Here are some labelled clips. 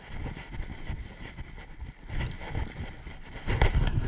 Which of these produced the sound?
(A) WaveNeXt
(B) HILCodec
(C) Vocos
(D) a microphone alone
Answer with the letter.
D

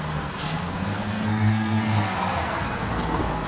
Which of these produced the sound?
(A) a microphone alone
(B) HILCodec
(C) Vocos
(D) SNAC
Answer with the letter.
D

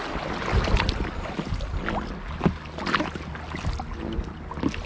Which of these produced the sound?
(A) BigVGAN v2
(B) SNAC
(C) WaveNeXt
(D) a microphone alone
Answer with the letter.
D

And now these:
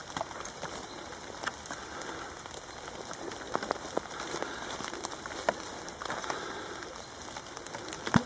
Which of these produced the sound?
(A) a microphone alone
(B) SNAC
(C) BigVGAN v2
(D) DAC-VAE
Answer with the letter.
A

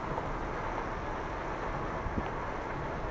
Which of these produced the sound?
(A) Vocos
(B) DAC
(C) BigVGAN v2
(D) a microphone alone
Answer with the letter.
D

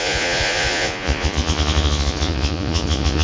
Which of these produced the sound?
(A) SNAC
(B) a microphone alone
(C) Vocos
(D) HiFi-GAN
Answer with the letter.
C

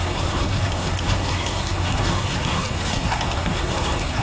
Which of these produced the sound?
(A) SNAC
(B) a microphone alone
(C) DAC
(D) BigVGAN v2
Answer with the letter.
A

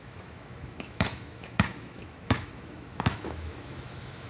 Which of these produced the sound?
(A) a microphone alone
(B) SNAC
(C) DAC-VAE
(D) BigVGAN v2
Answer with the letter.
C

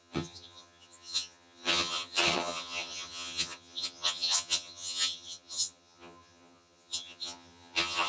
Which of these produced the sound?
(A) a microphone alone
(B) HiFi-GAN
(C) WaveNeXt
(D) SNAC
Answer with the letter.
B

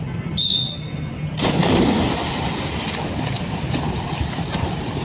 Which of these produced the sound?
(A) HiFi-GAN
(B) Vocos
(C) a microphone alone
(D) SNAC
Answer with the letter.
C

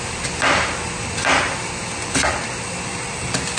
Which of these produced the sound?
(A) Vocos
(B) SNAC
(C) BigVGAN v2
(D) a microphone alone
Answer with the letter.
D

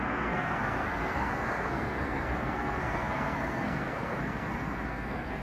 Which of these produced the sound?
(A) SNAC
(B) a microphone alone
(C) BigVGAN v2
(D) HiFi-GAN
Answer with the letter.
A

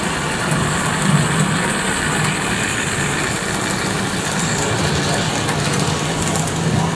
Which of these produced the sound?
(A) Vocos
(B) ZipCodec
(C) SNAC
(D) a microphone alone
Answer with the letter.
D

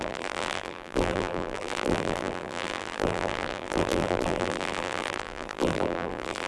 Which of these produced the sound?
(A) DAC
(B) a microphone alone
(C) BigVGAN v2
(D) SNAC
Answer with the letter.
C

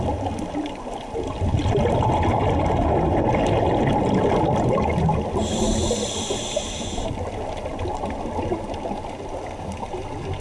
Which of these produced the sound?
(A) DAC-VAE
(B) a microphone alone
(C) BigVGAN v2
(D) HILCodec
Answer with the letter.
B